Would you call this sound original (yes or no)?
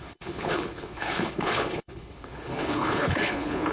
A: no